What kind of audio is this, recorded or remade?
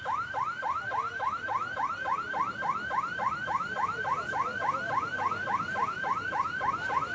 recorded